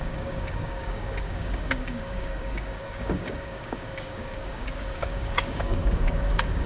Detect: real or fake fake